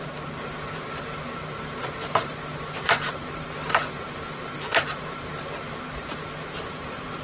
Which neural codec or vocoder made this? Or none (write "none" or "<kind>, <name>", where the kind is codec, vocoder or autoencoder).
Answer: vocoder, BigVGAN v2